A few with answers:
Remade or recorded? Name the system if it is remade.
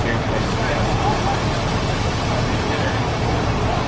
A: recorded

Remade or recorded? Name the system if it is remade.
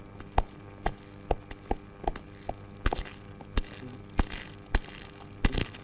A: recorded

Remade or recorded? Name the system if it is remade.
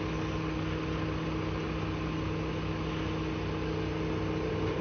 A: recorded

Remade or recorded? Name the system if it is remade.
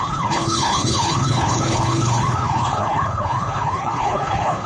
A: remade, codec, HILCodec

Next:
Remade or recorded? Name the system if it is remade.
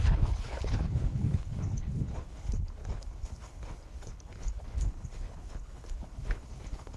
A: remade, codec, HILCodec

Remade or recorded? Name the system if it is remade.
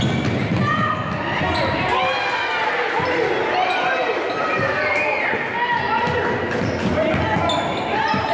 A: recorded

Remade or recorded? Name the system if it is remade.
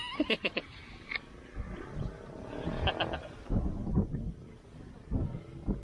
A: recorded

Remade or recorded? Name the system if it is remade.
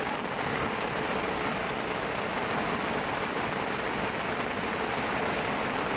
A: recorded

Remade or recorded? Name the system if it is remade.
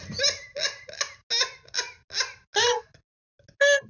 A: recorded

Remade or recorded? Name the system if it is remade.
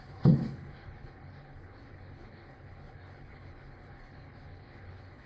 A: remade, codec, HILCodec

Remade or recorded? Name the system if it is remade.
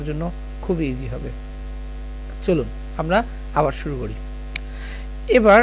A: recorded